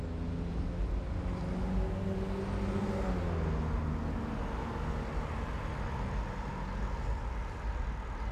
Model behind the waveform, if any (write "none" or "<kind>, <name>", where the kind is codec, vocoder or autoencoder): none